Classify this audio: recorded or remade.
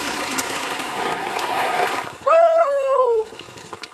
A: remade